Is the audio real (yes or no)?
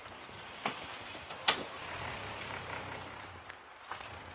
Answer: yes